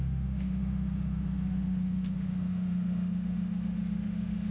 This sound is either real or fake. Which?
fake